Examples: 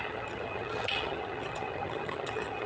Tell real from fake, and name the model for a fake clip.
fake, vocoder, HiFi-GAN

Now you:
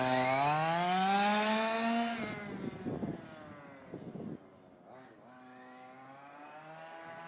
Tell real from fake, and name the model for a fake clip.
real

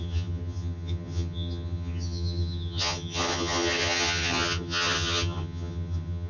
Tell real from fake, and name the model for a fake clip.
fake, vocoder, HiFi-GAN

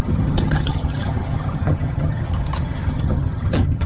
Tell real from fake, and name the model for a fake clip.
fake, vocoder, HiFi-GAN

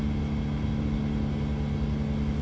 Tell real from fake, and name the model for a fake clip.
real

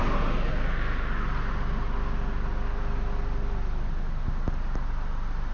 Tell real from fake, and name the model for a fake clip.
real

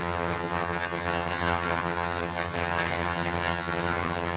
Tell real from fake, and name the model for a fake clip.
fake, vocoder, HiFi-GAN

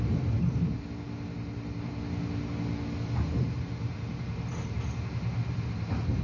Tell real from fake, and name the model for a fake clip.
real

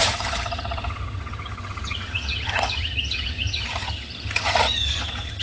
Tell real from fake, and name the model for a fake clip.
fake, vocoder, HiFi-GAN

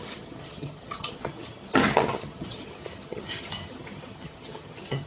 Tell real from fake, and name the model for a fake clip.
fake, vocoder, HiFi-GAN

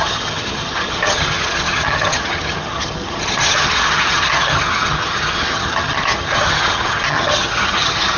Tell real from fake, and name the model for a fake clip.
fake, vocoder, HiFi-GAN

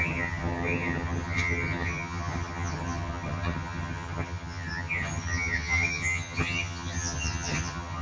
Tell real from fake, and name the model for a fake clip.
fake, vocoder, HiFi-GAN